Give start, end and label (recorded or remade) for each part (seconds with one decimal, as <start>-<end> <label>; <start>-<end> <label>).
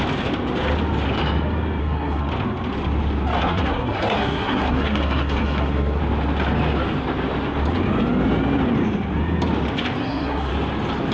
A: 0.0-1.8 recorded; 1.8-2.3 remade; 2.3-3.4 recorded; 3.4-6.0 remade; 6.0-10.0 recorded; 10.0-10.5 remade; 10.5-11.1 recorded